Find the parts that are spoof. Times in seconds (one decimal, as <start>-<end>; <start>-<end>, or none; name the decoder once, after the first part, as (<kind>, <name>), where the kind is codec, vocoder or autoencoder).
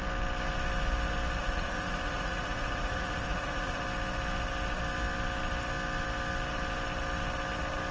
1.4-3.8 (vocoder, Vocos)